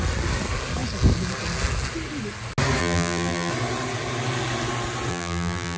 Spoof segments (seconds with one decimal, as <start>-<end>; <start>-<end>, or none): 2.8-3.5; 5.1-5.8